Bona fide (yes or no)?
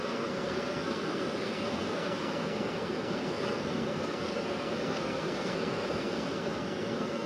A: no